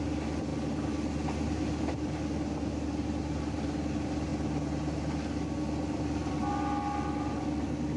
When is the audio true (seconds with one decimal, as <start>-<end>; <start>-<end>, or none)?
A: 0.0-8.0